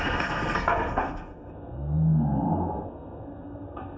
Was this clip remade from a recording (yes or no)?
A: yes